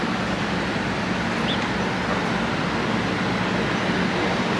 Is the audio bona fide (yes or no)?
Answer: yes